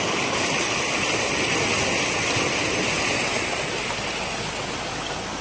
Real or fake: real